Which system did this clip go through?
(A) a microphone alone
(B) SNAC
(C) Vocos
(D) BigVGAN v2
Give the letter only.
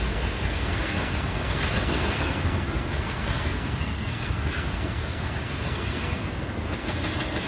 B